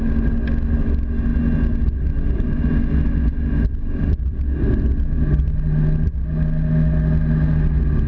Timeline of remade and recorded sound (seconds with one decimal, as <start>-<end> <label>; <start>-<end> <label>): 0.0-8.1 recorded